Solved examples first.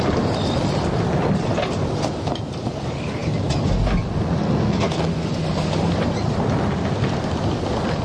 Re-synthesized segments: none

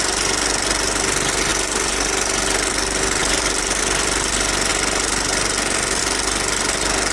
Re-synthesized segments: 3.2-3.8 (vocoder, BigVGAN v2)

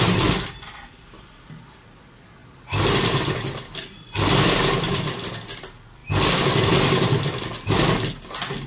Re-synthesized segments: 2.4-5.5 (vocoder, BigVGAN v2); 6.0-6.8

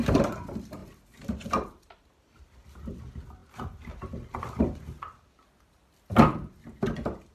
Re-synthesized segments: none

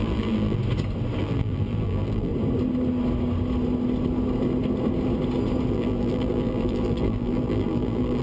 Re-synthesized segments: 0.0-0.6 (vocoder, BigVGAN v2); 1.2-2.3; 5.7-8.2

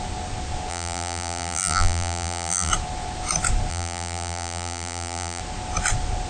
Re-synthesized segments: 0.7-2.7 (vocoder, BigVGAN v2); 3.7-5.4

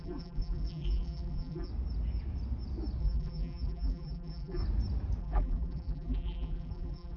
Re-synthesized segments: 0.0-1.7 (vocoder, BigVGAN v2); 3.0-4.6; 5.2-7.2

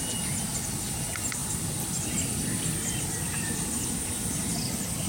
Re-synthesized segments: 1.4-4.5 (vocoder, BigVGAN v2)